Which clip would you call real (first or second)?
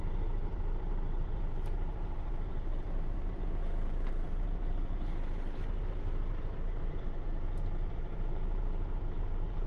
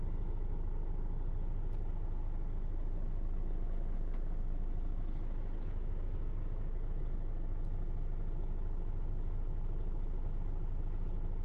second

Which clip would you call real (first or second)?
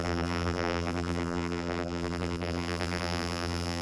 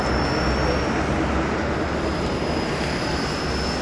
second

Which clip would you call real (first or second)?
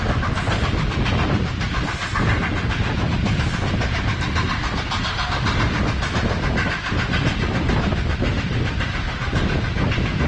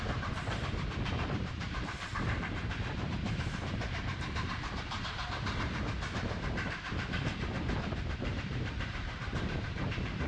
first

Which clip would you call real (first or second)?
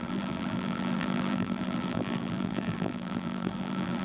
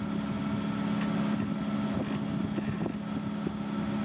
second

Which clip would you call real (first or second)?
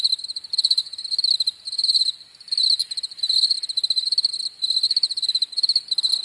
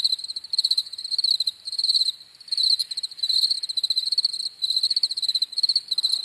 first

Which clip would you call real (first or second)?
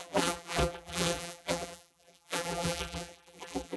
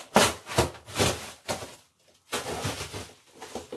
second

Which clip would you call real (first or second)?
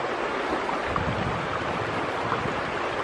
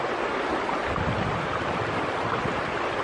first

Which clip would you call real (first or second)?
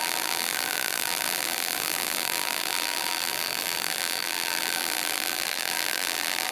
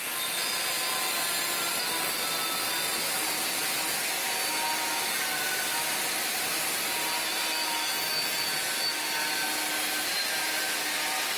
second